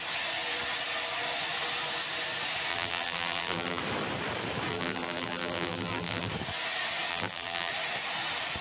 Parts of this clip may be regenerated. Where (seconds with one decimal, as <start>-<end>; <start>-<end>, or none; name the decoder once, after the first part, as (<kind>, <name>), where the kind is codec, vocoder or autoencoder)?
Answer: 2.7-3.8 (vocoder, BigVGAN v2); 4.7-6.3; 7.1-7.7